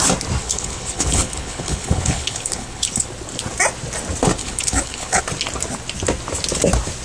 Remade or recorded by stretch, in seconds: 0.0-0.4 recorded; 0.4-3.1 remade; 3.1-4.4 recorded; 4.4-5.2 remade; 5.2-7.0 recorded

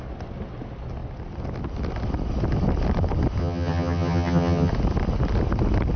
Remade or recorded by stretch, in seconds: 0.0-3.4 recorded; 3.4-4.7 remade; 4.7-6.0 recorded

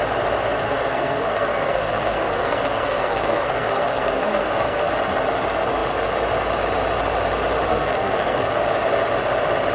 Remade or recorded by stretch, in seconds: 0.0-0.5 recorded; 0.5-4.9 remade; 4.9-7.7 recorded; 7.7-8.5 remade; 8.5-9.7 recorded

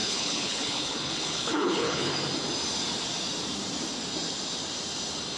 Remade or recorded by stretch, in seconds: 0.0-2.1 remade; 2.1-5.4 recorded

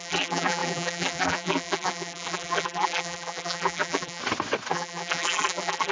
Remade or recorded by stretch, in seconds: 0.0-4.2 remade; 4.2-4.7 recorded; 4.7-5.9 remade

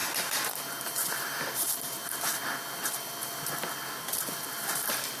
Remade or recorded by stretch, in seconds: 0.0-2.4 remade; 2.4-5.2 recorded

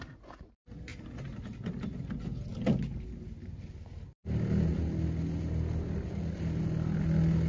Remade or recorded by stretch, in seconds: 0.0-7.5 recorded